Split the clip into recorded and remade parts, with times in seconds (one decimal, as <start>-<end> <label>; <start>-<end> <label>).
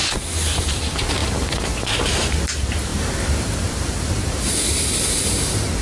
0.0-0.6 recorded; 0.6-5.8 remade